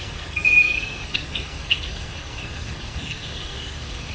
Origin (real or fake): fake